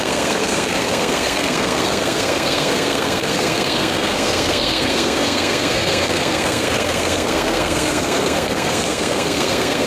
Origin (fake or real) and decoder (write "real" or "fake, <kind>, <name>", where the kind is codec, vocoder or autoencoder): fake, codec, SNAC